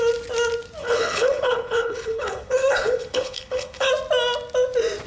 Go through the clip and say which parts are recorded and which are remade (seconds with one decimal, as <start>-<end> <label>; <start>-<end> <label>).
0.0-0.8 recorded; 0.8-3.9 remade; 3.9-5.1 recorded